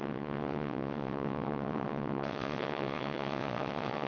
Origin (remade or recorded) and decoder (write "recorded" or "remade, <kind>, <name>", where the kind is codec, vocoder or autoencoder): remade, vocoder, WaveNeXt